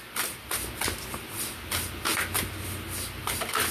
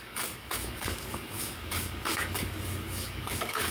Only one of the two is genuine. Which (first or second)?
first